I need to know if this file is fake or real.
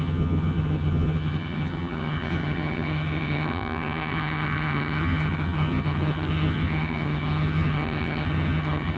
fake